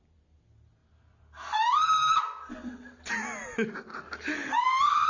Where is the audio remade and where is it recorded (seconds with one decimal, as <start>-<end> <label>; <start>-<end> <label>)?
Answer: 0.0-5.1 recorded